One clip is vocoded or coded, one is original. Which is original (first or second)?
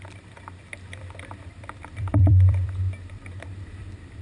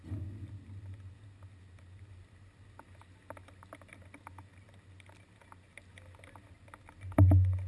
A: second